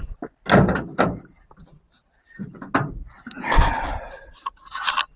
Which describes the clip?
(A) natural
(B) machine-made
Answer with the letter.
A